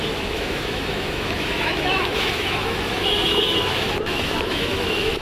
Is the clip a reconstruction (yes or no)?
yes